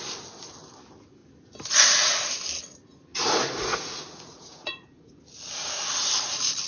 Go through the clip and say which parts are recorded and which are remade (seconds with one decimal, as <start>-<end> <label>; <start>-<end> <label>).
0.0-3.1 recorded; 3.1-5.2 remade; 5.2-6.7 recorded